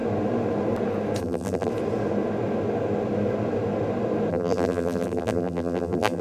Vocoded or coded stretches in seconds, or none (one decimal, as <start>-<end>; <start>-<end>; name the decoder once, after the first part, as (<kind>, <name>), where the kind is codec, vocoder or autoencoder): 1.2-1.7 (vocoder, BigVGAN v2); 4.3-6.2